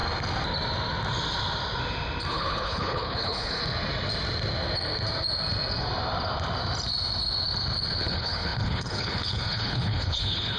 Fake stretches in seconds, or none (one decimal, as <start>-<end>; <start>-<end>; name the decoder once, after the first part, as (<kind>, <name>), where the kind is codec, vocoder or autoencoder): 2.3-3.6 (codec, HILCodec); 8.0-10.6